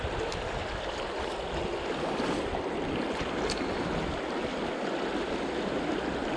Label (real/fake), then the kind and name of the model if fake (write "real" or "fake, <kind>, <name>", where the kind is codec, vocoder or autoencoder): real